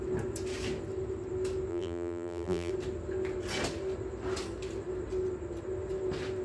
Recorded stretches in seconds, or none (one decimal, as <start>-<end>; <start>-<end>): 0.0-1.7; 2.7-6.4